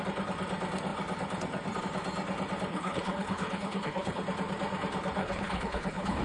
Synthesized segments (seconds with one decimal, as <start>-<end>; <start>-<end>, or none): 2.7-4.2; 5.2-6.2

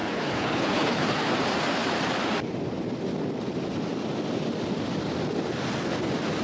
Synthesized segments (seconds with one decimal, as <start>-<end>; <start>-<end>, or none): 0.0-1.3